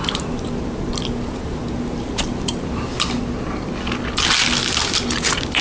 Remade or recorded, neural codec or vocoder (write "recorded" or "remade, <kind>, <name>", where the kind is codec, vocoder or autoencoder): recorded